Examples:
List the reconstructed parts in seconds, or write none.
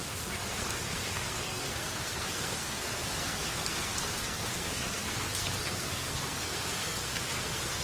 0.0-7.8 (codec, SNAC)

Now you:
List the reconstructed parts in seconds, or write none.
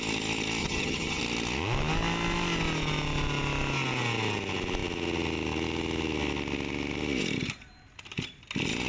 0.6-1.2 (vocoder, HiFi-GAN)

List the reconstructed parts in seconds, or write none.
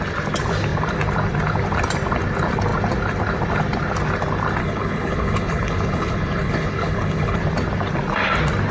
4.6-7.4 (codec, HILCodec)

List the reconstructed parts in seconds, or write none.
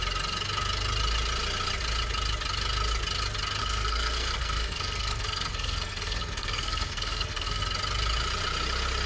3.6-7.6 (codec, SNAC)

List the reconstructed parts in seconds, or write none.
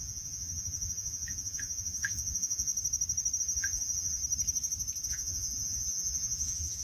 0.0-2.7 (vocoder, Vocos); 3.4-4.2; 5.1-6.8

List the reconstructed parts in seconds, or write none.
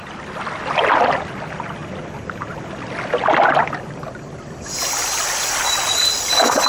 none